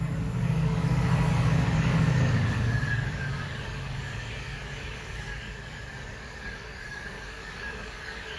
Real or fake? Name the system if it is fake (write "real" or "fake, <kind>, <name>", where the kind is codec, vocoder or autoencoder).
fake, codec, DAC